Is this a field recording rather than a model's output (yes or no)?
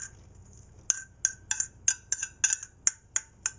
yes